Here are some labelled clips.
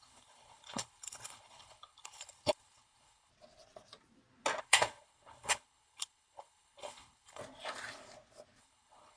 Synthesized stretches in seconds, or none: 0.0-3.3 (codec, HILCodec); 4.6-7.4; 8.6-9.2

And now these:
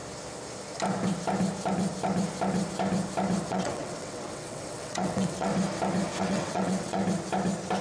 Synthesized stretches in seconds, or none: 3.5-5.5 (vocoder, WaveNeXt); 6.2-7.0

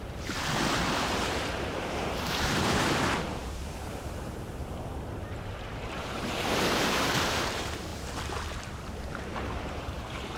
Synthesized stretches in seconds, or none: 0.0-7.9 (vocoder, BigVGAN v2); 9.1-10.4

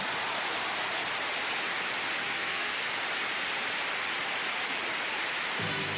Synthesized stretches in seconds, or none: 2.2-2.7 (codec, SNAC)

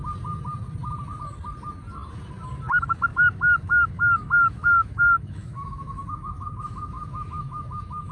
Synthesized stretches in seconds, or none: 3.1-8.1 (autoencoder, DAC-VAE)

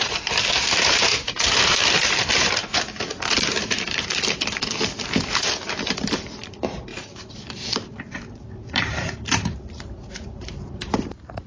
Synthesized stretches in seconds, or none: 0.0-2.3 (vocoder, BigVGAN v2); 6.5-11.5

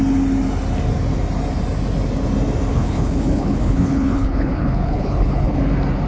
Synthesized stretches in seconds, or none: 2.7-5.6 (codec, HILCodec)